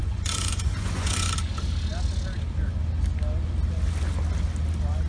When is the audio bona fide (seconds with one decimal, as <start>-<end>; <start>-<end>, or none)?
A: 1.3-5.1